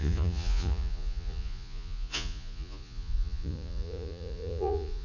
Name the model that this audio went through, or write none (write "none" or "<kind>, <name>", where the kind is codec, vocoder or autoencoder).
vocoder, Vocos